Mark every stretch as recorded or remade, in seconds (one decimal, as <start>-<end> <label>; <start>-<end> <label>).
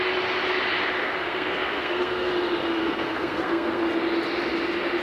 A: 0.0-1.0 recorded; 1.0-2.3 remade; 2.3-2.8 recorded; 2.8-3.8 remade; 3.8-5.0 recorded